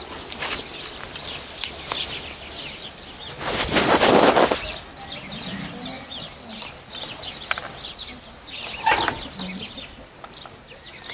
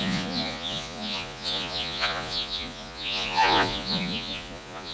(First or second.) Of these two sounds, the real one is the first